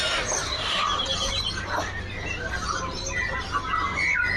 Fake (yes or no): no